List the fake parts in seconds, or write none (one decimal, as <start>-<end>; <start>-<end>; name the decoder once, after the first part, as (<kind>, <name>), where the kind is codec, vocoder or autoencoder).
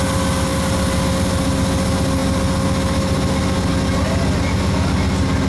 none